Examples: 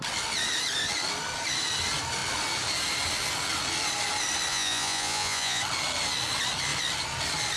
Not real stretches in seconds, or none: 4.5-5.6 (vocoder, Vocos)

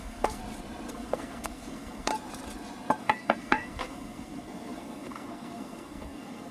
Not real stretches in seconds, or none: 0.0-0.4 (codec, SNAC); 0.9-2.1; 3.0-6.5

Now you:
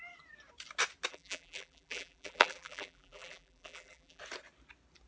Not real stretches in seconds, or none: 1.1-4.2 (vocoder, BigVGAN v2)

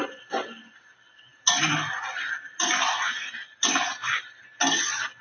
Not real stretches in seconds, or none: 0.0-0.6 (vocoder, BigVGAN v2)

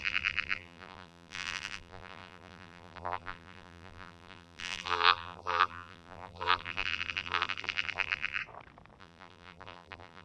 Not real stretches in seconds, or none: 0.0-8.4 (vocoder, BigVGAN v2); 9.0-10.2

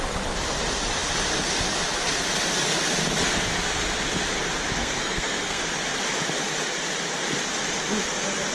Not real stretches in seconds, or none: 4.8-5.6 (codec, SNAC)

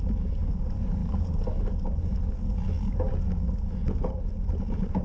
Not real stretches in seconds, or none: none

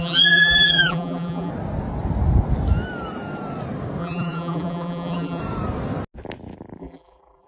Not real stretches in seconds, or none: 0.0-1.5 (vocoder, BigVGAN v2); 4.0-5.4; 6.8-7.5